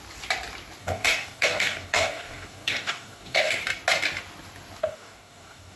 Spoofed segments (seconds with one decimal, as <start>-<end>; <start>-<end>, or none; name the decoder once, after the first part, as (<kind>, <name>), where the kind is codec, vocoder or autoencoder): 0.8-3.6 (codec, DAC); 4.8-5.8